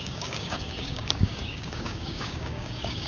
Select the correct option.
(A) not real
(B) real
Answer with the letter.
A